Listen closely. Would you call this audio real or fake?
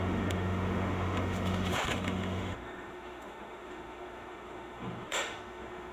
fake